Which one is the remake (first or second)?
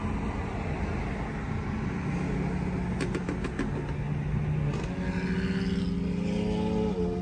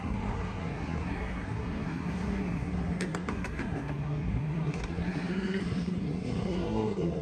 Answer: second